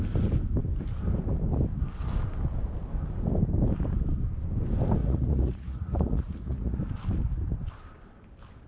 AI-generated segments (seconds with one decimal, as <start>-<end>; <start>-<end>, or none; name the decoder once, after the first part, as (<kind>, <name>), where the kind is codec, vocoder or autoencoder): 5.0-6.8 (vocoder, Vocos)